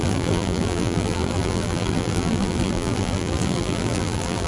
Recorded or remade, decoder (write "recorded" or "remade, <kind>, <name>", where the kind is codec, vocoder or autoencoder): remade, vocoder, BigVGAN v2